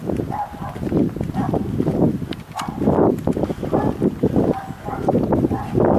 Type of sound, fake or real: real